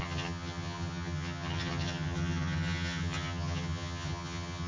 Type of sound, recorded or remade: remade